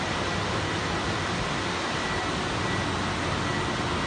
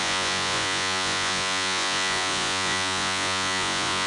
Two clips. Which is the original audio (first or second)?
first